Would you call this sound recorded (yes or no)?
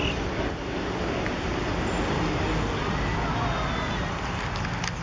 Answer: yes